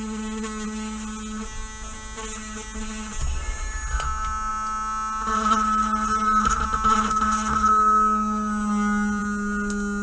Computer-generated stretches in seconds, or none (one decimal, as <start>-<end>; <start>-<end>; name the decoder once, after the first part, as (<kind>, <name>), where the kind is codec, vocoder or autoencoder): none